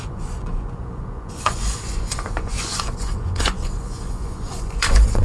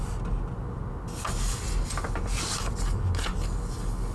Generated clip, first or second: first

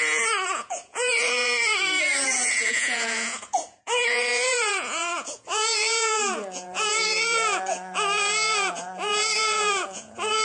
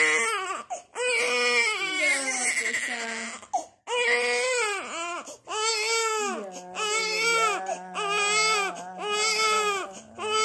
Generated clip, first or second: first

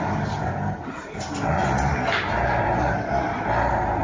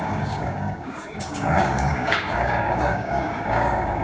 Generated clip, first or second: second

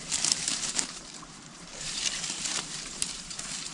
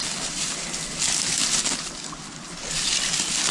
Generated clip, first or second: first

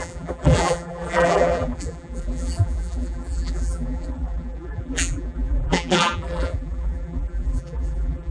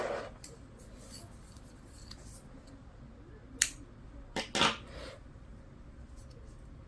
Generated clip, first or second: first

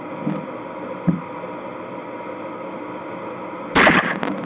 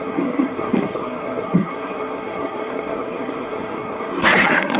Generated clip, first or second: second